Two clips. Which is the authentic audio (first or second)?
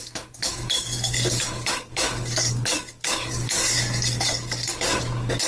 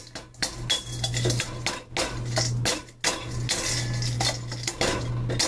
second